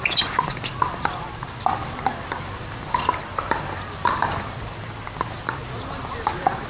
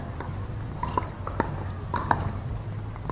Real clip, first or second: second